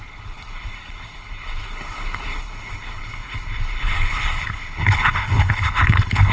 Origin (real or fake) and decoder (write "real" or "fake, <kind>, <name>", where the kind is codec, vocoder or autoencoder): fake, codec, HILCodec